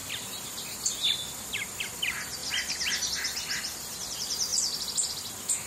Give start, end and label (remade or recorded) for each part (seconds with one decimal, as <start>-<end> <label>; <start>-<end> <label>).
0.0-5.7 recorded

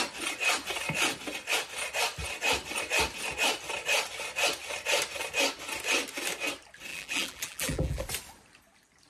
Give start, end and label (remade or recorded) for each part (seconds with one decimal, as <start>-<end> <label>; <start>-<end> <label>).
0.0-6.9 recorded; 6.9-8.0 remade; 8.0-9.1 recorded

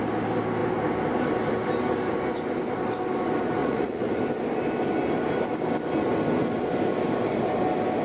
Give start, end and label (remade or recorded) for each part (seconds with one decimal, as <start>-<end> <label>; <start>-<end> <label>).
0.0-3.6 recorded; 3.6-4.2 remade; 4.2-8.0 recorded

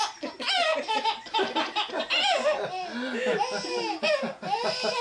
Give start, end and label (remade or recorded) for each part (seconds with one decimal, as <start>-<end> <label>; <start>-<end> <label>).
0.0-5.0 recorded

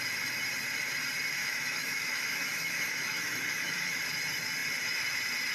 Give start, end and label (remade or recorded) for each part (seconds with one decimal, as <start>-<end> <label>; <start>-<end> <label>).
0.0-1.4 recorded; 1.4-4.0 remade; 4.0-5.5 recorded

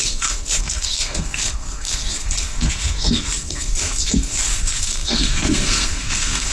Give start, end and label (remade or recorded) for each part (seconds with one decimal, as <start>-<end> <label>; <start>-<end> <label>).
0.0-6.5 remade